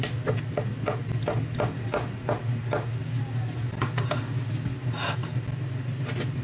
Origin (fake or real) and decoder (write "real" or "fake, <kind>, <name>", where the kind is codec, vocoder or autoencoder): real